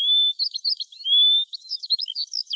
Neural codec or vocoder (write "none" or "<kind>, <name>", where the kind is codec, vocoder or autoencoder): autoencoder, DAC-VAE